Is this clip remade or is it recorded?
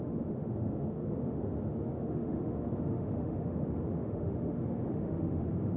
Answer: remade